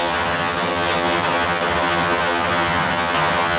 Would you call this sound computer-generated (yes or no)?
yes